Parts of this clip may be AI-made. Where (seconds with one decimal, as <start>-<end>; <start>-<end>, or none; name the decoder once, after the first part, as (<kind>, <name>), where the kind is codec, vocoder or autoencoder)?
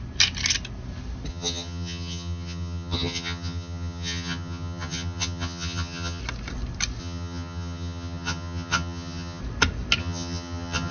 1.3-6.2 (vocoder, HiFi-GAN); 7.0-9.4; 10.0-10.9